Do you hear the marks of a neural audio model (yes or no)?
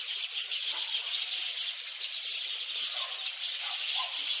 no